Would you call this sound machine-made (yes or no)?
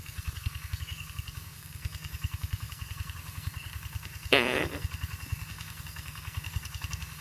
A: yes